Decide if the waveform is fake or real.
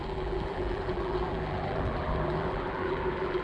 fake